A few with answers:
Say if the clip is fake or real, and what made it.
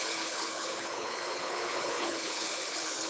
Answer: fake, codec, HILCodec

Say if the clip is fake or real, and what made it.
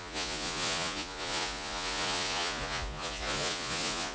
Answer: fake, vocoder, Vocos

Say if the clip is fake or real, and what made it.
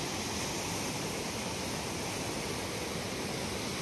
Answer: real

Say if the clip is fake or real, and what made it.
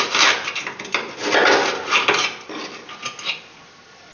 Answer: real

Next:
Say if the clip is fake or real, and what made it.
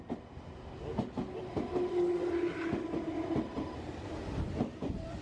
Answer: real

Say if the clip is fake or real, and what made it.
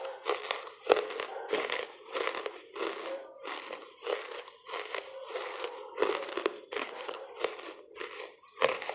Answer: real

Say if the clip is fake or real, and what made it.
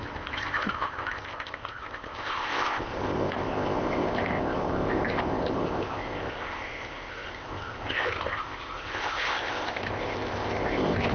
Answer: fake, codec, ZipCodec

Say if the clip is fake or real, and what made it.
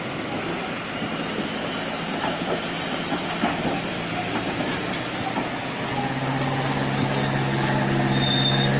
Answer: real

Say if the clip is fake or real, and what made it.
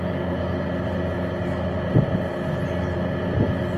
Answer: real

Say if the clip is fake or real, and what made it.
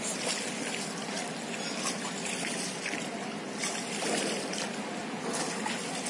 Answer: real